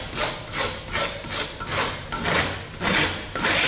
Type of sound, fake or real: real